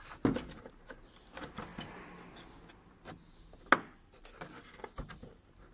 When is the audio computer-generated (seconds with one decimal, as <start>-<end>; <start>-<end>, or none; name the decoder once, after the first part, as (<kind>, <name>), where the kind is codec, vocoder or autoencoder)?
none